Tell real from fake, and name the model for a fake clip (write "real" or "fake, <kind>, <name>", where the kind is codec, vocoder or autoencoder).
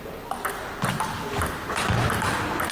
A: real